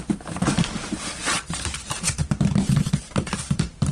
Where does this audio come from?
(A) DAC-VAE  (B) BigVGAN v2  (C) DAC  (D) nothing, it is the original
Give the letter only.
B